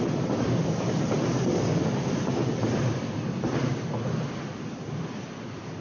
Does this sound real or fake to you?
fake